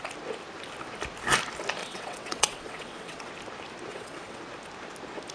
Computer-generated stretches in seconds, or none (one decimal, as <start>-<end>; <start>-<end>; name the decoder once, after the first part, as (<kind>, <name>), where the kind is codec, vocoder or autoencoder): 1.8-3.3 (vocoder, WaveNeXt); 3.9-4.4

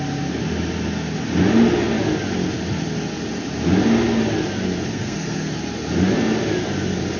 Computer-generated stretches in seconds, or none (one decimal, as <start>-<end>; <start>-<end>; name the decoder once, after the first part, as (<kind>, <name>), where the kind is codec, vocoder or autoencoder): 4.9-5.5 (codec, SNAC)

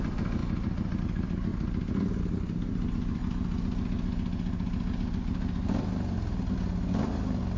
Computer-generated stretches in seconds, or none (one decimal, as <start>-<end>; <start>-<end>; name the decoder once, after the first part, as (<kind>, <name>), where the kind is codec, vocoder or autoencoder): 0.0-3.2 (vocoder, BigVGAN v2)

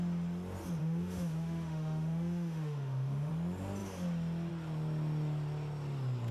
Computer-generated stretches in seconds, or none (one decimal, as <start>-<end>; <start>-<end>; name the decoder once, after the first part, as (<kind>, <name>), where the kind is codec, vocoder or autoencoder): 0.8-3.3 (autoencoder, DAC-VAE)

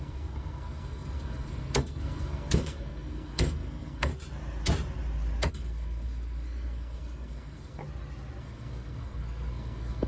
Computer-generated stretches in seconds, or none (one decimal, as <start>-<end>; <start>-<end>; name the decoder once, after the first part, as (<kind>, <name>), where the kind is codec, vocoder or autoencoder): 0.0-4.1 (codec, SNAC); 5.5-7.8; 8.4-10.1